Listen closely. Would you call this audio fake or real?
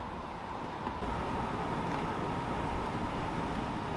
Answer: real